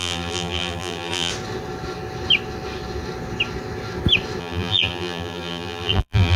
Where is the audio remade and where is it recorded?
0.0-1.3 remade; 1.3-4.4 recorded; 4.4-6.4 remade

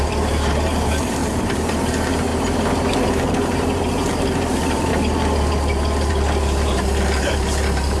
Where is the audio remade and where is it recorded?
0.0-2.3 remade; 2.3-3.1 recorded; 3.1-4.9 remade; 4.9-6.1 recorded; 6.1-8.0 remade

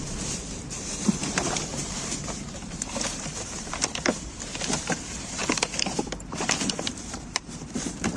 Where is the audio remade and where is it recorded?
0.0-8.2 remade

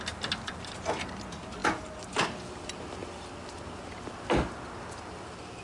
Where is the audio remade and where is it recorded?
0.0-1.6 recorded; 1.6-2.4 remade; 2.4-5.6 recorded

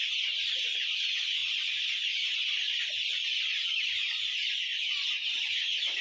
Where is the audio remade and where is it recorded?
0.0-1.4 recorded; 1.4-2.7 remade; 2.7-3.5 recorded; 3.5-4.1 remade; 4.1-4.7 recorded; 4.7-6.0 remade

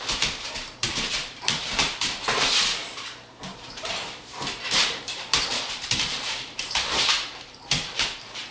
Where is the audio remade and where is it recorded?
0.0-8.5 remade